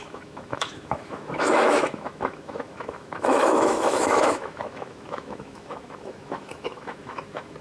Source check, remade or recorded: remade